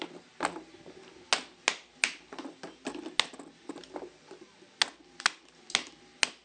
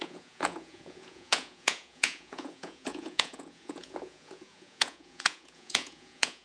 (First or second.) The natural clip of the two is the first